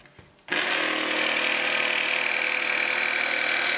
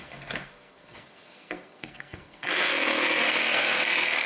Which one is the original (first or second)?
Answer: first